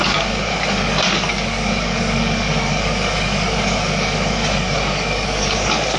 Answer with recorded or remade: remade